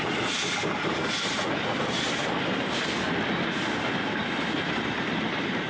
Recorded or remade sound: recorded